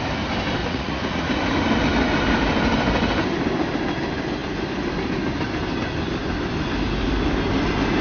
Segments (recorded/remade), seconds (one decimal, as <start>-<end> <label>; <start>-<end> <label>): 0.0-0.6 recorded; 0.6-1.3 remade; 1.3-8.0 recorded